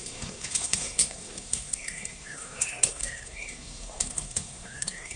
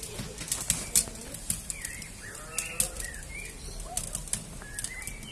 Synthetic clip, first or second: first